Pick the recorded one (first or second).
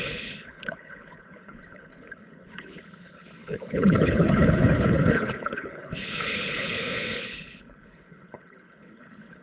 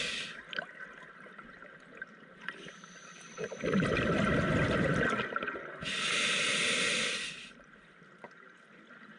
second